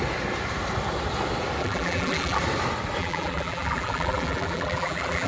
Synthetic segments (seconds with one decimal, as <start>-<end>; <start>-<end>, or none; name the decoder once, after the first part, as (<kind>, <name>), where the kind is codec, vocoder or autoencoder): 1.6-2.4 (vocoder, BigVGAN v2); 3.0-5.3

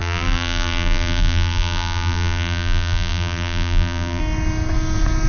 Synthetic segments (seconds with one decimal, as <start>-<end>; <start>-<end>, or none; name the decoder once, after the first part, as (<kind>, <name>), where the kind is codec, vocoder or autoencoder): 0.0-4.2 (vocoder, BigVGAN v2)

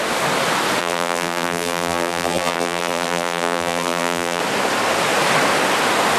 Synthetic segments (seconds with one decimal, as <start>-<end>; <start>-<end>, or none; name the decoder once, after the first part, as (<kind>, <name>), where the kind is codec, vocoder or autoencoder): 0.8-4.4 (vocoder, BigVGAN v2)